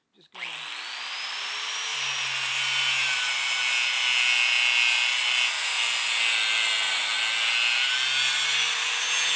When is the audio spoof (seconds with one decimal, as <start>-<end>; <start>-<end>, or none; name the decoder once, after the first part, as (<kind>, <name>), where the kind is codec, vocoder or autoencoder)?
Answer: none